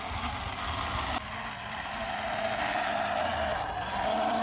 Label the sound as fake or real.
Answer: real